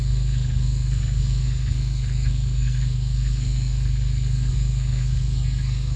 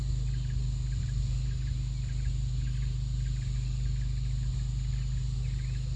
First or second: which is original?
second